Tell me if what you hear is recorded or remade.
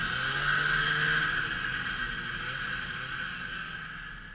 recorded